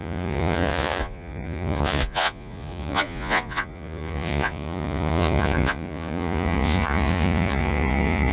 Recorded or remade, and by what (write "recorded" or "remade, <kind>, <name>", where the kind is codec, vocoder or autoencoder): remade, vocoder, Vocos